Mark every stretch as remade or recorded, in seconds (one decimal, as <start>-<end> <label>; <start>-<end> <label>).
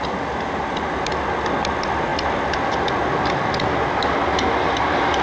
0.0-5.2 recorded